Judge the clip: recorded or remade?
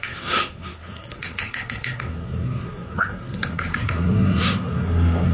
remade